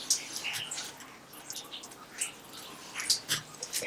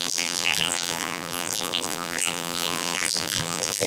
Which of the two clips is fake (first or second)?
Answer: second